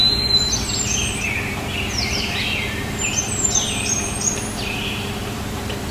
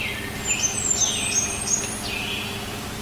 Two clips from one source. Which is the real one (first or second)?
second